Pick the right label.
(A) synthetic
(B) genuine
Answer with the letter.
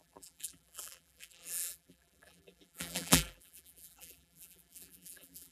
A